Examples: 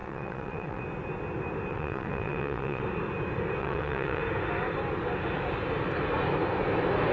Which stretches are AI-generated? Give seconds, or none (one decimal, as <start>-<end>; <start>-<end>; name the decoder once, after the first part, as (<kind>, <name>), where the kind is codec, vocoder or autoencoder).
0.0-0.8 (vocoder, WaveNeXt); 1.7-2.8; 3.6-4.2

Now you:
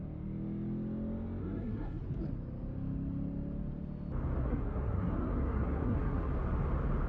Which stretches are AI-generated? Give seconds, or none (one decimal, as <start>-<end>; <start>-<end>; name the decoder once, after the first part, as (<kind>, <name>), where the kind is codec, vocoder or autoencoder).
1.4-2.0 (codec, SNAC); 4.4-6.3

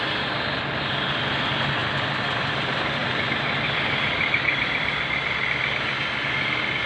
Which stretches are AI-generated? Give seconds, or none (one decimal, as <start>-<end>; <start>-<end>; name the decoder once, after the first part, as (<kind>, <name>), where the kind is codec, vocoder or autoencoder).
1.8-2.6 (vocoder, BigVGAN v2); 3.0-5.0

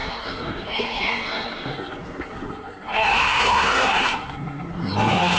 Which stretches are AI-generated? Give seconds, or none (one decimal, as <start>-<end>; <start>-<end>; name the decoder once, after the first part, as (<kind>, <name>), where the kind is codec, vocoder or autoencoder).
0.0-5.4 (codec, SNAC)